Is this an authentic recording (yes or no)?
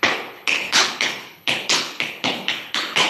no